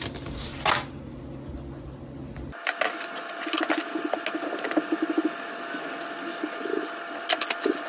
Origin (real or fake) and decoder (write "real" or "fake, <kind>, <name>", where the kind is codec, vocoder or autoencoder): real